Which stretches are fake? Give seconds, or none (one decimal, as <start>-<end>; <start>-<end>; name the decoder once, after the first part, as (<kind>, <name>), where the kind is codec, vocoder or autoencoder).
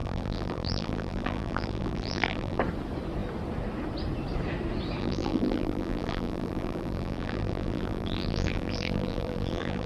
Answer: 0.0-2.6 (vocoder, BigVGAN v2); 5.0-9.9